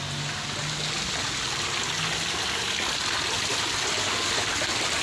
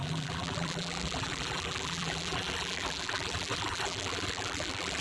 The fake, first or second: second